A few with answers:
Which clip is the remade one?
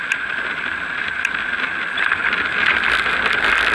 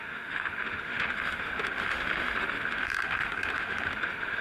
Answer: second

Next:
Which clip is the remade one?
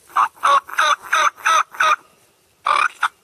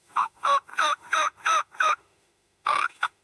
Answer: second